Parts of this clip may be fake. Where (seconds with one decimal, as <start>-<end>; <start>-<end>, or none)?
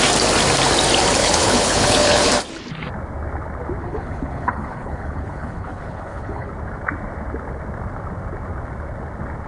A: 1.2-2.3; 3.8-6.5